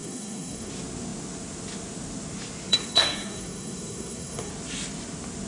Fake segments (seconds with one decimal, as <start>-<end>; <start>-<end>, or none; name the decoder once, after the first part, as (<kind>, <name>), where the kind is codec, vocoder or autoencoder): 0.0-0.7 (codec, SNAC); 2.7-4.5